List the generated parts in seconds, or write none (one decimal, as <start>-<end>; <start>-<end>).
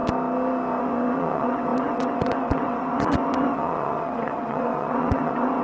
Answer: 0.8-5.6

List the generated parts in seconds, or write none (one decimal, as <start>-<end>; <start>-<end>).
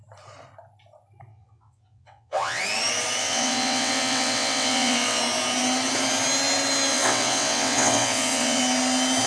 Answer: 1.3-2.6; 3.2-5.2; 6.9-8.6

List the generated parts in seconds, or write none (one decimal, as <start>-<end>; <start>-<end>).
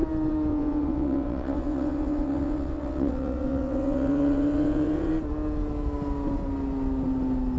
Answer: 0.5-5.1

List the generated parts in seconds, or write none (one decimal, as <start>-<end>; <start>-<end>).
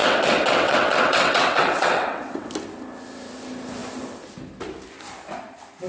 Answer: 0.0-2.5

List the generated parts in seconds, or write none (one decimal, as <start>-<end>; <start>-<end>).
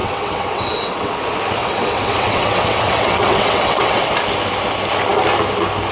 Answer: 0.0-1.1; 1.6-4.1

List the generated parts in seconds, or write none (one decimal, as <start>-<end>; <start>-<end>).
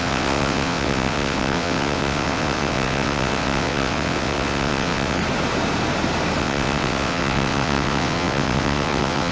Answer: 0.0-5.2; 6.4-9.3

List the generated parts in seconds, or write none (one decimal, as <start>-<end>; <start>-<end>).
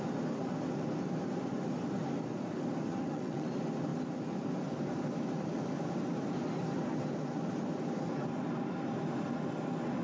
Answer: 2.9-3.5